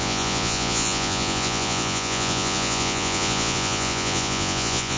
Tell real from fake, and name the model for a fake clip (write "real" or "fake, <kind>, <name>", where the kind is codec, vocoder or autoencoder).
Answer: fake, vocoder, Vocos